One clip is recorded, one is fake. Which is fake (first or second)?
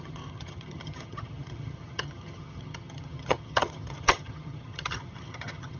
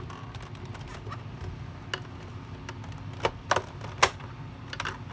first